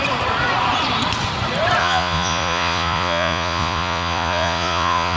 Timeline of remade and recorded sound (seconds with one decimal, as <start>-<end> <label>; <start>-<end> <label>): 0.0-1.8 recorded; 1.8-5.2 remade